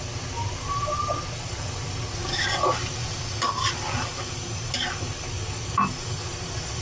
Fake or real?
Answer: real